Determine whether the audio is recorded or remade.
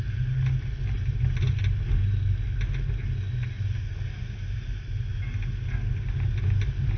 recorded